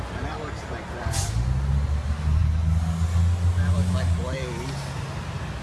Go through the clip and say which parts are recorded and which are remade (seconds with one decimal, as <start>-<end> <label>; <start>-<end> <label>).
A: 0.0-5.6 recorded